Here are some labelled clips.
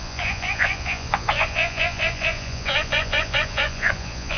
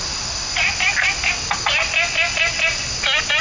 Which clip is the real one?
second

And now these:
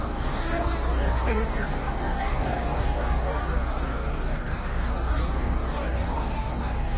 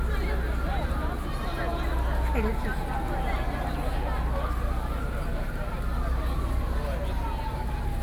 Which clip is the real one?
second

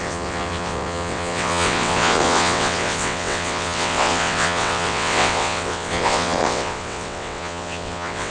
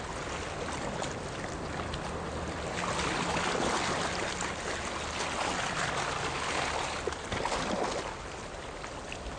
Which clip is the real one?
second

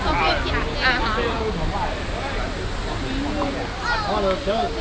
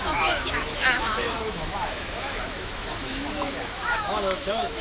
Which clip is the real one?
first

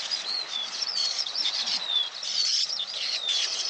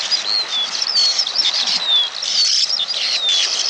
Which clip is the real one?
second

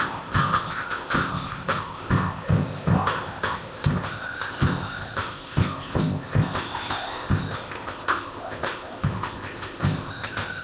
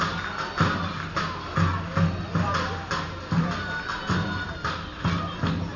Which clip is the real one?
second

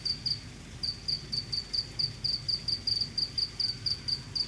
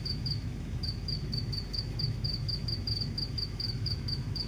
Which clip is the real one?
first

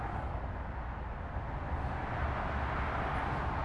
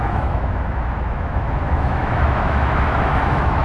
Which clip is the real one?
first